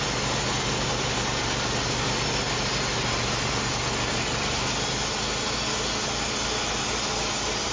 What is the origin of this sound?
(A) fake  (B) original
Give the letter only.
B